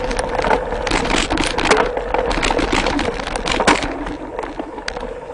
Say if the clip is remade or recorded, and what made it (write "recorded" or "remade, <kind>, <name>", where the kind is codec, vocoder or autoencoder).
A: recorded